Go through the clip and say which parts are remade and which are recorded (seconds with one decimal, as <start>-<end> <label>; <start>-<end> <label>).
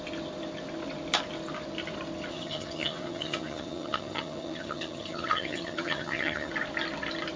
0.0-2.3 recorded; 2.3-6.5 remade; 6.5-7.4 recorded